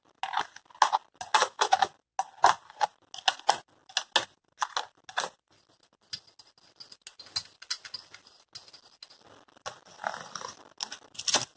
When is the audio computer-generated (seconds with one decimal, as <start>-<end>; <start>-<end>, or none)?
1.4-1.9